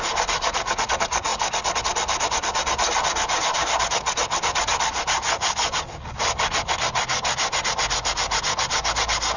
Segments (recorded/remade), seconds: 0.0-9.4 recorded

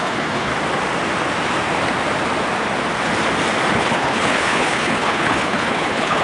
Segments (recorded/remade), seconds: 0.0-0.5 remade; 0.5-3.7 recorded; 3.7-6.2 remade

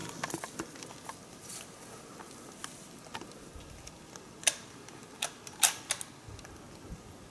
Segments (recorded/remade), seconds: 0.0-7.3 recorded

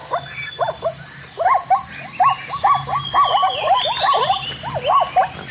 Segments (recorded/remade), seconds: 0.0-3.4 recorded; 3.4-4.3 remade; 4.3-5.5 recorded

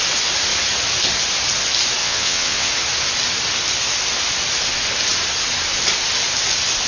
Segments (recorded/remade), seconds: 0.0-2.0 recorded; 2.0-2.7 remade; 2.7-6.9 recorded

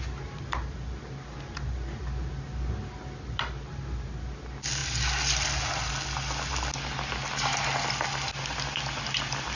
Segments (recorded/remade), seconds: 0.0-9.6 recorded

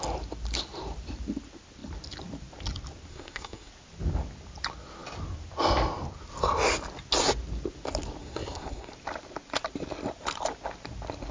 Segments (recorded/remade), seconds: 0.0-3.1 recorded; 3.1-3.7 remade; 3.7-8.2 recorded; 8.2-8.9 remade; 8.9-11.3 recorded